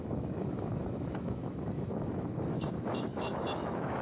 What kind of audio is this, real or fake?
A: fake